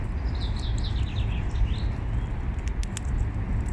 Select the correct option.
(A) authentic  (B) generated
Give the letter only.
A